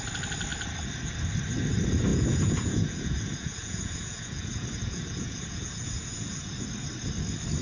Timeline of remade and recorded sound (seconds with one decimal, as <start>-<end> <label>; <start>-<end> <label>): 0.0-2.1 recorded; 2.1-6.7 remade; 6.7-7.6 recorded